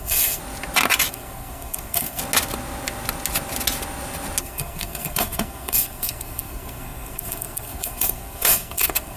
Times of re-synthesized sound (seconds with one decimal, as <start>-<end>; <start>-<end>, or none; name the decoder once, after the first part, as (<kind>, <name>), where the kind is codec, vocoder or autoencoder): 0.0-0.4 (codec, SNAC); 1.1-2.2; 4.4-9.2